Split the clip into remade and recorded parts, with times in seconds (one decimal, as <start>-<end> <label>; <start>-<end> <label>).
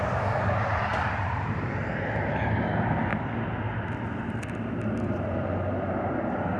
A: 0.0-0.9 recorded; 0.9-1.9 remade; 1.9-3.1 recorded; 3.1-3.9 remade; 3.9-6.6 recorded